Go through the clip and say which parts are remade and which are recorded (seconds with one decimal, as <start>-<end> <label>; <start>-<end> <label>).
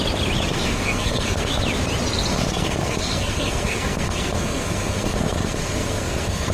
0.0-0.5 recorded; 0.5-1.5 remade; 1.5-2.3 recorded; 2.3-6.5 remade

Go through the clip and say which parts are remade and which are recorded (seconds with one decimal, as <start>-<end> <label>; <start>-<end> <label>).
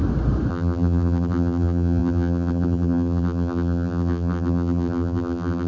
0.0-0.5 recorded; 0.5-5.7 remade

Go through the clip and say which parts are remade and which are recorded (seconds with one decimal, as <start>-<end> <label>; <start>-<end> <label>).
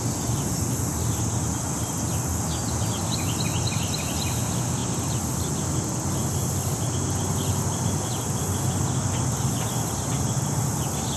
0.0-11.2 recorded